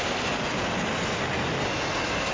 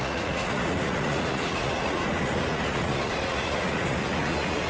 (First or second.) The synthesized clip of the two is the second